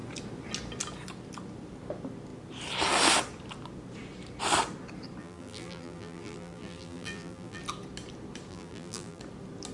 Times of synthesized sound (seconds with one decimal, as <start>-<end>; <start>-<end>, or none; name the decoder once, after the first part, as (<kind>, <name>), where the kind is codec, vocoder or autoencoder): 5.2-7.6 (vocoder, BigVGAN v2); 8.5-9.2